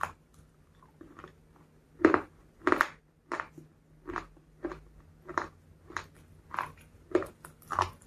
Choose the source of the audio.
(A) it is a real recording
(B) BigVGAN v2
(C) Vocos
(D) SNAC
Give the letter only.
A